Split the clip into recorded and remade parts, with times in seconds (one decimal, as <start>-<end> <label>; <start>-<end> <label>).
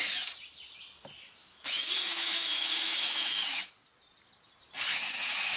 0.0-1.4 recorded; 1.4-3.7 remade; 3.7-4.9 recorded; 4.9-5.6 remade